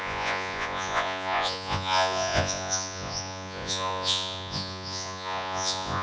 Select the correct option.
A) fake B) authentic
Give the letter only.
A